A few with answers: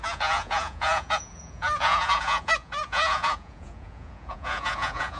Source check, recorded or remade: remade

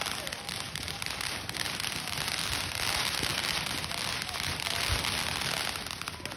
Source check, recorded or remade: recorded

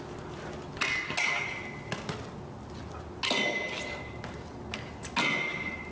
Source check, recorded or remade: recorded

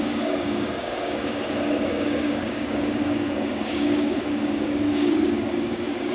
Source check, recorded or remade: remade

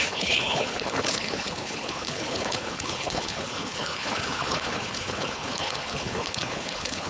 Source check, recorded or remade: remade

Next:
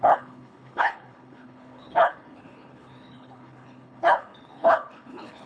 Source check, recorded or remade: remade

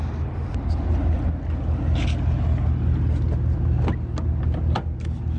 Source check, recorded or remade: recorded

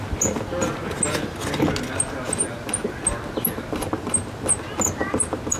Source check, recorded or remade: recorded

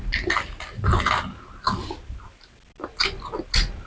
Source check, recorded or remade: recorded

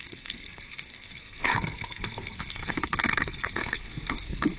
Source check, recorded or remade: remade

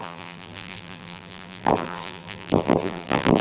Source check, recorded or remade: remade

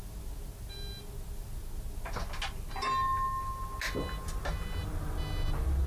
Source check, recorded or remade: recorded